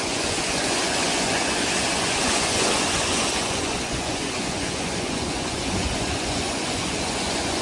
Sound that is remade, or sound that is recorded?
remade